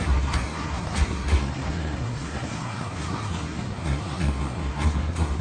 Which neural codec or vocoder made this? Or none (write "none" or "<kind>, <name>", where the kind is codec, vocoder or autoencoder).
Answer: codec, SNAC